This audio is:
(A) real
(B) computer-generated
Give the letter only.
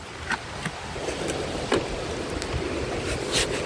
A